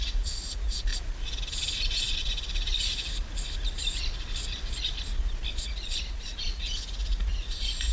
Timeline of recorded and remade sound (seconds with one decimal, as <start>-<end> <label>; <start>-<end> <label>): 0.0-0.9 remade; 0.9-5.6 recorded; 5.6-7.9 remade